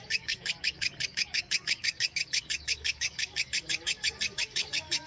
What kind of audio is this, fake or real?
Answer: fake